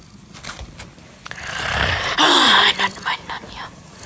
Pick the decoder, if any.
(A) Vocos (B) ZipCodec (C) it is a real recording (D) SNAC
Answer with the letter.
C